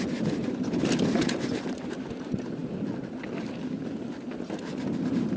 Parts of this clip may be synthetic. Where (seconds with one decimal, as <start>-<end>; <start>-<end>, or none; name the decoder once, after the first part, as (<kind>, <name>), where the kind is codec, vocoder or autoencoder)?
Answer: none